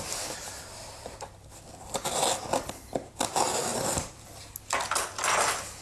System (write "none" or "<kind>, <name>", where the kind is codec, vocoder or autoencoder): none